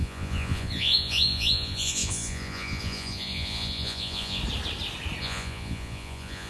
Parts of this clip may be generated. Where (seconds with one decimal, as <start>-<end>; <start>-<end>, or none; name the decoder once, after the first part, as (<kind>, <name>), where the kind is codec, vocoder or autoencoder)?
0.0-4.4 (vocoder, Vocos); 5.2-6.5